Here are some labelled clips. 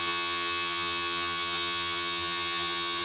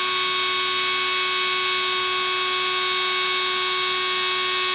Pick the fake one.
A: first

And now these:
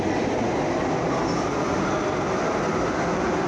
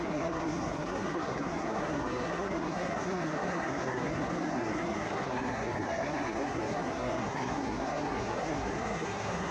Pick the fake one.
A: second